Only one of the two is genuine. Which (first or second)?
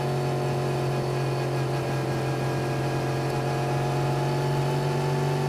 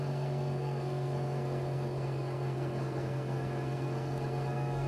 first